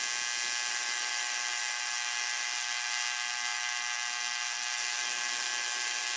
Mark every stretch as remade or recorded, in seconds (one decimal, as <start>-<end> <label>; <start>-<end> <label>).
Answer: 0.0-0.7 recorded; 0.7-6.2 remade

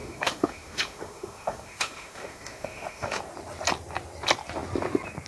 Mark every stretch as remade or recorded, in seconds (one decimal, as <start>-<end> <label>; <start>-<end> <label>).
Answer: 0.0-3.2 remade; 3.2-5.3 recorded

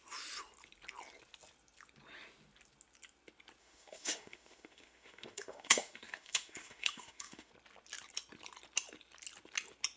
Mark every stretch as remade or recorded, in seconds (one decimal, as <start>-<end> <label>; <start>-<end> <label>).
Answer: 0.0-3.6 recorded; 3.6-7.5 remade; 7.5-10.0 recorded

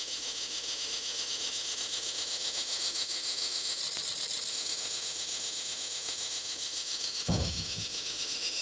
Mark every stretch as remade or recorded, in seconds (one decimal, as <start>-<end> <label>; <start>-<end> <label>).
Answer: 0.0-3.8 remade; 3.8-4.5 recorded; 4.5-8.6 remade

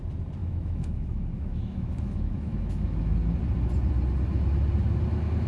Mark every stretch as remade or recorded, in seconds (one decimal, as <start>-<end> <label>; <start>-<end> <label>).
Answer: 0.0-0.4 recorded; 0.4-3.0 remade; 3.0-5.5 recorded